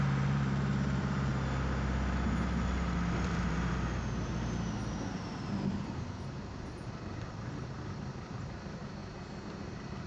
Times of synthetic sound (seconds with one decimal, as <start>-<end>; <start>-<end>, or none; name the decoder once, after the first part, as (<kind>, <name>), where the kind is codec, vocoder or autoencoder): 0.0-1.3 (vocoder, BigVGAN v2); 3.2-9.0; 9.6-10.1